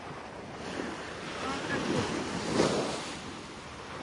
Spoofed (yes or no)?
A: no